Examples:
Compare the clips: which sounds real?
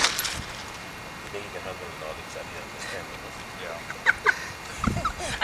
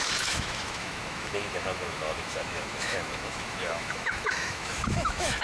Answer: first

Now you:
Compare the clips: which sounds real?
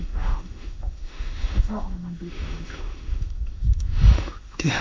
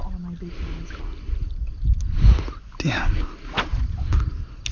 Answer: second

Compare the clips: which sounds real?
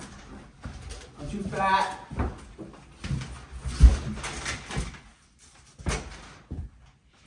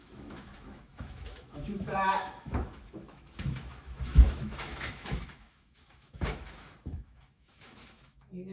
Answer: first